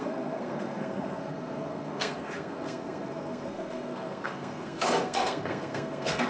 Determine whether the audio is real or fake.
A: fake